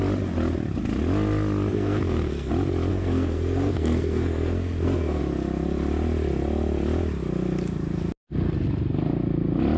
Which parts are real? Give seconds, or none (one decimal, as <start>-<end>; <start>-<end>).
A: 0.0-1.7; 2.5-2.9; 5.2-9.8